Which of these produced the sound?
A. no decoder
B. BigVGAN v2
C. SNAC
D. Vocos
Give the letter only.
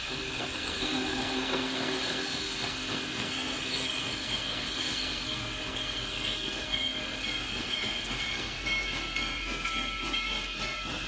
C